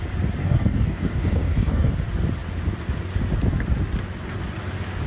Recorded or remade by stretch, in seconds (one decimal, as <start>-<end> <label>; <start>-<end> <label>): 0.0-0.4 recorded; 0.4-1.9 remade; 1.9-5.1 recorded